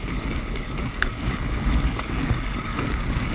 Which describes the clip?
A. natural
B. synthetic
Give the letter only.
B